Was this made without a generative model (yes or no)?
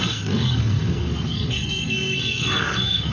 no